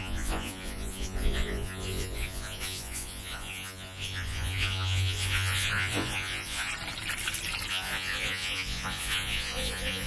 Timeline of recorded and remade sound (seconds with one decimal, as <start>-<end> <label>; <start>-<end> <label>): 0.0-6.7 remade; 6.7-7.7 recorded; 7.7-10.1 remade

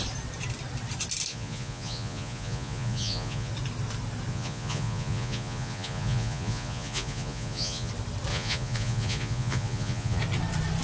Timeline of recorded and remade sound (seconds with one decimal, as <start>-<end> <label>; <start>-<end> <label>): 0.0-1.3 recorded; 1.3-3.5 remade; 3.5-4.3 recorded; 4.3-7.9 remade; 7.9-8.3 recorded; 8.3-10.2 remade; 10.2-10.8 recorded

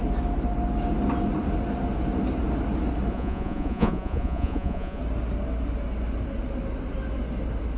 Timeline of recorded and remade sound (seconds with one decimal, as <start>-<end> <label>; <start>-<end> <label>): 0.0-3.1 recorded; 3.1-5.0 remade; 5.0-7.8 recorded

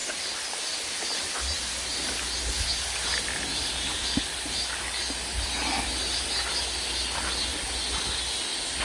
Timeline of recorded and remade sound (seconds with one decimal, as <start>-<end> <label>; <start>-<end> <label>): 0.0-8.8 recorded

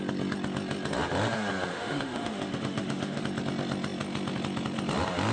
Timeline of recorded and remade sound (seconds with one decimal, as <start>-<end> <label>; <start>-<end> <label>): 0.0-1.7 recorded; 1.7-3.2 remade; 3.2-5.3 recorded